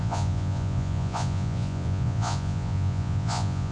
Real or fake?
fake